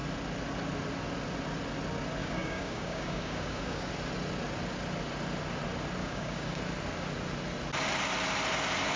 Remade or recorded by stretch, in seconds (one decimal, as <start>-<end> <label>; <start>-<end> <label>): 0.0-2.2 recorded; 2.2-3.9 remade; 3.9-6.0 recorded; 6.0-6.6 remade; 6.6-9.0 recorded